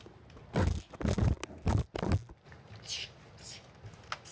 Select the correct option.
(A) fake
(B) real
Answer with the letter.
B